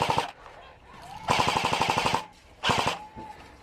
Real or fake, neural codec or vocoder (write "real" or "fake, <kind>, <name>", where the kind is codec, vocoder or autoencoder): real